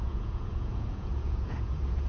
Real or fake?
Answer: fake